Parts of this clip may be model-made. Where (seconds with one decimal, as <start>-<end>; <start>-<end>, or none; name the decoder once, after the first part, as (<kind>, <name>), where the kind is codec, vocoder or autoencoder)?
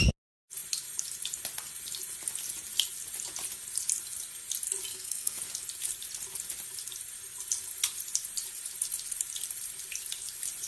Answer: 4.9-5.4 (codec, SNAC)